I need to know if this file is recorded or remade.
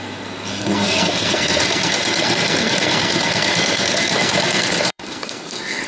remade